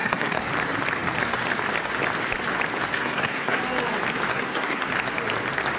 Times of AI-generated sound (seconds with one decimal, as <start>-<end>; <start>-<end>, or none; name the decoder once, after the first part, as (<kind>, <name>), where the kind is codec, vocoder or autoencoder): 0.0-0.5 (codec, SNAC); 2.9-3.6; 4.3-4.9